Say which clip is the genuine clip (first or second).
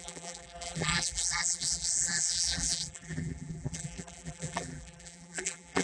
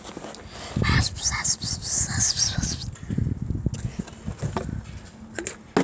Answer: second